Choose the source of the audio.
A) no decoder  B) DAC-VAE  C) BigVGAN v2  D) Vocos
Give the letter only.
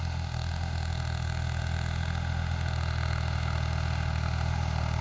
B